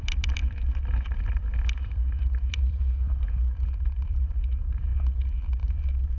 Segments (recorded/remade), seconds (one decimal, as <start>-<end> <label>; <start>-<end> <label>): 0.0-4.9 remade; 4.9-6.2 recorded